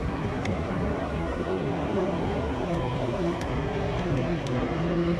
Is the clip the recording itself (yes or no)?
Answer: no